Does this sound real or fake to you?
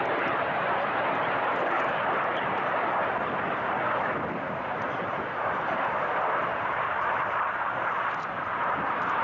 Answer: real